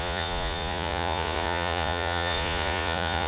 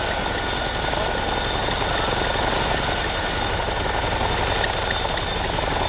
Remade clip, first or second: first